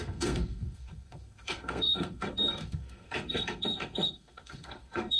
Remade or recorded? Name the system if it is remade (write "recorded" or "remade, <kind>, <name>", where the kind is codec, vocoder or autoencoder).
remade, codec, SNAC